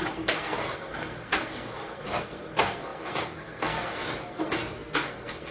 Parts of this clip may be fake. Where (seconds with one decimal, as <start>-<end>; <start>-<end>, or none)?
0.0-5.5